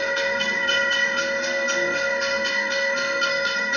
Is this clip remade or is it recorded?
remade